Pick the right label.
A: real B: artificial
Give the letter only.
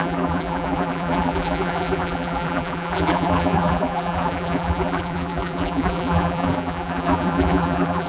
B